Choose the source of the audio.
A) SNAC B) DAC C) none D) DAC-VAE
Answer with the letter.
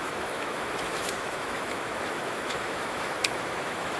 D